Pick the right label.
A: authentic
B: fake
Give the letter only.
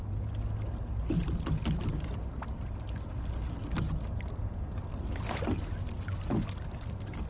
A